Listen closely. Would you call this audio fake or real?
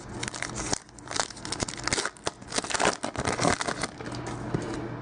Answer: real